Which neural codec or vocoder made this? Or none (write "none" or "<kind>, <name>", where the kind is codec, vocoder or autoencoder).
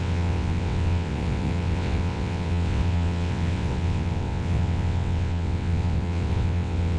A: vocoder, WaveNeXt